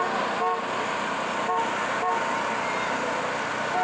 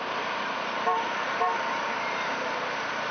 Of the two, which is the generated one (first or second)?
second